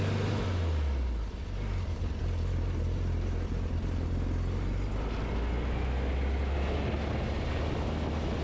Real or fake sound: real